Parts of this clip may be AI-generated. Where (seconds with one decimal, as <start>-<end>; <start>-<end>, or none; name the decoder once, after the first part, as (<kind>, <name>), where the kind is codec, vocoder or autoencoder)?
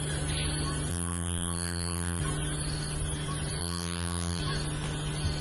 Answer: 0.9-2.2 (vocoder, BigVGAN v2); 3.6-4.4